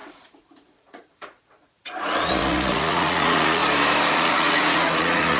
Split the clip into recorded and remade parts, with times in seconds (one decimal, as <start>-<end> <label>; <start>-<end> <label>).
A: 0.0-3.6 remade; 3.6-4.1 recorded; 4.1-5.4 remade